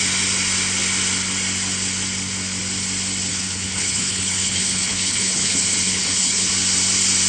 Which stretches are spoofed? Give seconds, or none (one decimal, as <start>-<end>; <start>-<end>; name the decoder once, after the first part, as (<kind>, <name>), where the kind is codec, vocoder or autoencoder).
3.3-6.5 (codec, HILCodec)